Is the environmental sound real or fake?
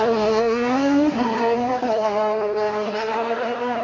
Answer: fake